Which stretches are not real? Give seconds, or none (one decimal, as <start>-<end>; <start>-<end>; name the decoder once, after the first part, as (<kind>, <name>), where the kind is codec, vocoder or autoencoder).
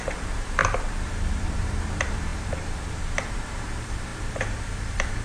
0.0-0.6 (vocoder, BigVGAN v2); 1.3-5.2